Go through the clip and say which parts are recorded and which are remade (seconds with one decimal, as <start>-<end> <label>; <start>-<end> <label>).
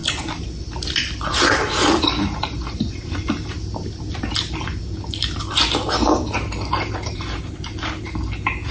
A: 0.0-8.7 recorded